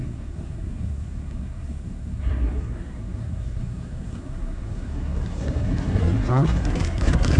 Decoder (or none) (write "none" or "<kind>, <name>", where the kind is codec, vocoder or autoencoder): codec, SNAC